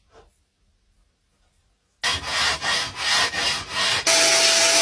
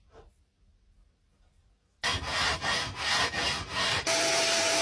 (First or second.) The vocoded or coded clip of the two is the second